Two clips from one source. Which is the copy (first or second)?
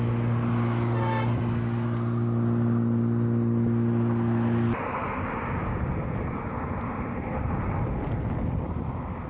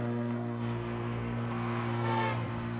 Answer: second